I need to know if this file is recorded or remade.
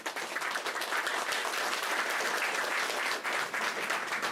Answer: recorded